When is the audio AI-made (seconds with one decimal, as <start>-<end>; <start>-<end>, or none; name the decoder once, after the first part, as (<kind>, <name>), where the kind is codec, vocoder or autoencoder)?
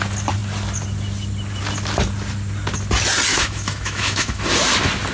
3.3-4.4 (autoencoder, DAC-VAE)